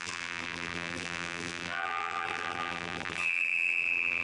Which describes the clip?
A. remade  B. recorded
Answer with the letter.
A